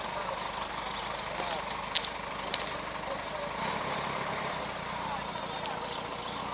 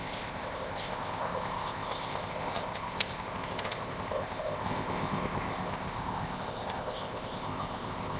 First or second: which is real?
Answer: first